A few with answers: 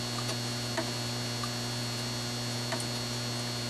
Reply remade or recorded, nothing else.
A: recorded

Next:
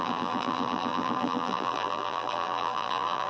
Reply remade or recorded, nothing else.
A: remade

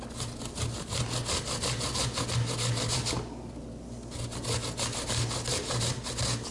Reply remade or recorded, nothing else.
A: recorded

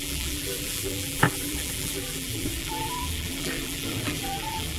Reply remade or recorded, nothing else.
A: remade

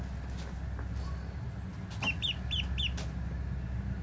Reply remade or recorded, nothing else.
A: recorded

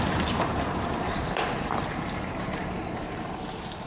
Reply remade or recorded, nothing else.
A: remade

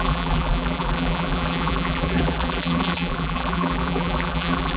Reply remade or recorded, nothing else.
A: remade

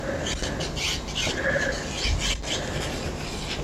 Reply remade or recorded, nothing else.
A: recorded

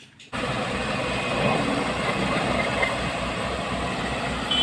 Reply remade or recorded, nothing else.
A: remade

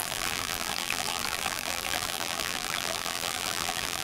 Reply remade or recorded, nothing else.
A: remade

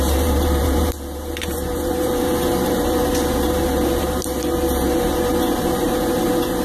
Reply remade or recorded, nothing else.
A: remade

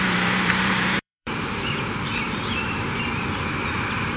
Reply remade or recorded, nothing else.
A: remade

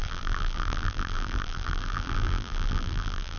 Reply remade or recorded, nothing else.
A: remade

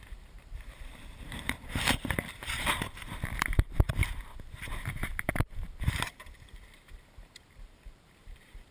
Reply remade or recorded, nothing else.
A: remade